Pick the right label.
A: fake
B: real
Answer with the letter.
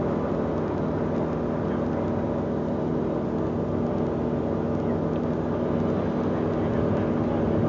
B